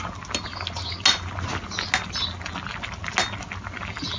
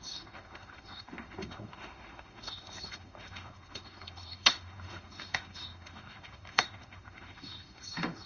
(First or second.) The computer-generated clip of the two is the second